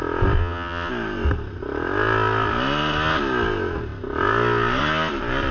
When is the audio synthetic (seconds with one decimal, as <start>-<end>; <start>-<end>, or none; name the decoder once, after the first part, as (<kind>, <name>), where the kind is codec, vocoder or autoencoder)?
0.4-0.9 (vocoder, WaveNeXt)